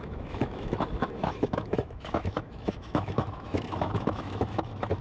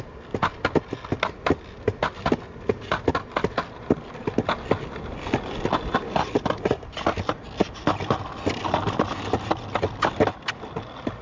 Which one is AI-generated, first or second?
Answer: first